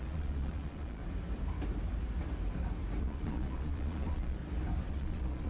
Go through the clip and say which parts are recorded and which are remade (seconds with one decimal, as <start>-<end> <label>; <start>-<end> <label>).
0.0-1.0 remade; 1.0-3.0 recorded; 3.0-4.4 remade; 4.4-4.9 recorded; 4.9-5.5 remade